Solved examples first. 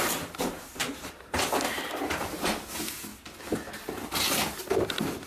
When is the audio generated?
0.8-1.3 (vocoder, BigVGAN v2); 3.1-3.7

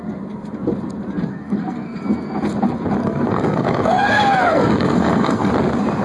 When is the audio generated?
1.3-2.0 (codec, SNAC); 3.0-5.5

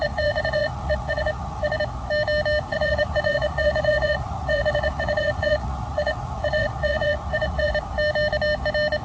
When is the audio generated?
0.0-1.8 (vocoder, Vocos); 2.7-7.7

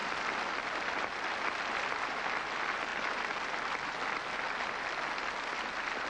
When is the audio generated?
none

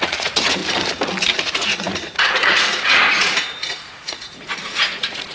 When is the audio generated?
0.0-0.6 (vocoder, Vocos); 1.4-5.3